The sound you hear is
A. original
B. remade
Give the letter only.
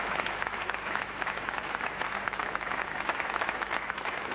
B